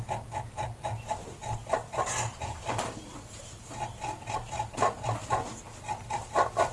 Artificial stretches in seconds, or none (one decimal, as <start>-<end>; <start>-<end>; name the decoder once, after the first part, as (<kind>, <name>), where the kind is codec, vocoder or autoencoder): none